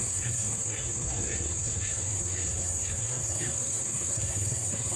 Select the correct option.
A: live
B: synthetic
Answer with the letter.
B